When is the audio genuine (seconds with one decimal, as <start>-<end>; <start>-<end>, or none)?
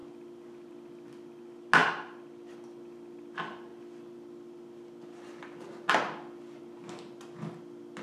0.0-8.0